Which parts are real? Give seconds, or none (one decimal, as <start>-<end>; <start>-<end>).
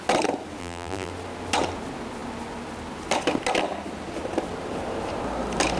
0.0-0.6; 1.1-5.8